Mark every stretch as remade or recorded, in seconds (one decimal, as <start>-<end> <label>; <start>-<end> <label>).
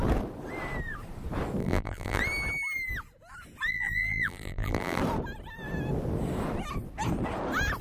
0.0-1.6 recorded; 1.6-2.2 remade; 2.2-3.7 recorded; 3.7-5.0 remade; 5.0-7.8 recorded